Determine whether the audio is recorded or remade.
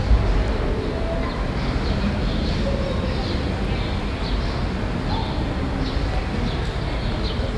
recorded